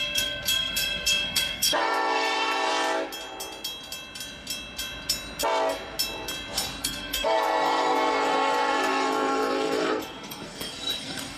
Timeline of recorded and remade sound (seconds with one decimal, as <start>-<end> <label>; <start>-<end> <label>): 0.0-2.7 remade; 2.7-6.8 recorded; 6.8-11.4 remade